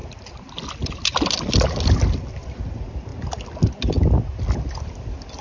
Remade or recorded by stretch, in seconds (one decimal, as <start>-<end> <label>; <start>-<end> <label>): 0.0-5.4 recorded